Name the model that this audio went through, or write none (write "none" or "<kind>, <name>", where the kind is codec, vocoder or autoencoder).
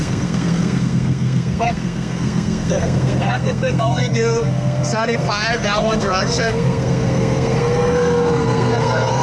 codec, SNAC